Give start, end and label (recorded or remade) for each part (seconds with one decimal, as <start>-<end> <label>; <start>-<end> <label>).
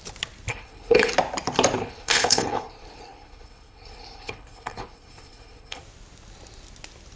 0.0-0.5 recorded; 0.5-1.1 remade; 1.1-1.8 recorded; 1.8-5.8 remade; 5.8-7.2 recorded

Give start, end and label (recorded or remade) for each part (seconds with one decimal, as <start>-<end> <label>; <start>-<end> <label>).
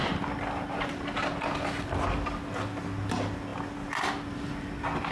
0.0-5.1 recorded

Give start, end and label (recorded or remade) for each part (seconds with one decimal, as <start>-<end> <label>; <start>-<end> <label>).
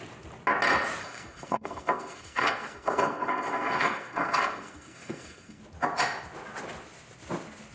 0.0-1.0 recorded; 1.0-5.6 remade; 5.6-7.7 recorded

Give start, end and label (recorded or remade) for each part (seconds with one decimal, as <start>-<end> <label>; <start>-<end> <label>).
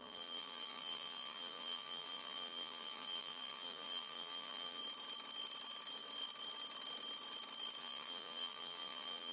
0.0-4.8 remade; 4.8-7.8 recorded; 7.8-9.3 remade